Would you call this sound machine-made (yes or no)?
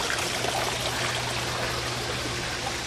no